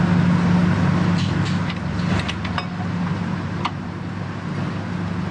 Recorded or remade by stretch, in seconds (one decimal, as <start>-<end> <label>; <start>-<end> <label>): 0.0-5.3 recorded